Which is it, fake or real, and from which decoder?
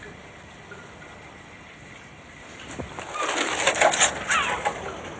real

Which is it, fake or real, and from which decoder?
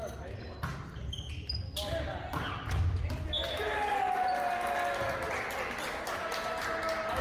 real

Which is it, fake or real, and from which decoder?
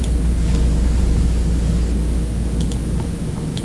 fake, codec, DAC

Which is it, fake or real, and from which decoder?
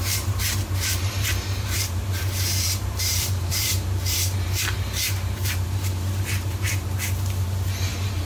fake, vocoder, BigVGAN v2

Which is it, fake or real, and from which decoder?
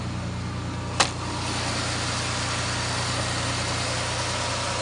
real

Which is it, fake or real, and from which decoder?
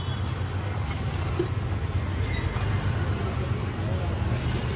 real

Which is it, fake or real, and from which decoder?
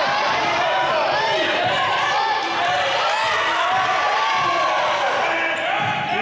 real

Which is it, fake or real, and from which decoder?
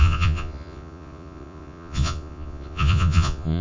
fake, vocoder, Vocos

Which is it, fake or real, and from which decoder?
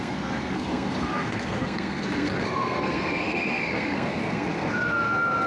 fake, codec, SNAC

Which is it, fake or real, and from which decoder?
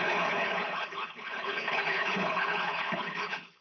fake, codec, HILCodec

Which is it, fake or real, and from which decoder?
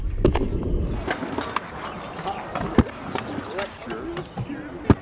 real